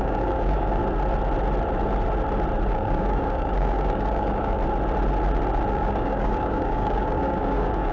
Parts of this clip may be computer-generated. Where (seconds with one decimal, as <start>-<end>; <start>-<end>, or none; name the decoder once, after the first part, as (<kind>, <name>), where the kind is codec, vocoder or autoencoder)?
0.0-0.8 (codec, DAC); 2.7-4.6; 5.7-7.9